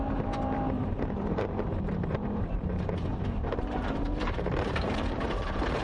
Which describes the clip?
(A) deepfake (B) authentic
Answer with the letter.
A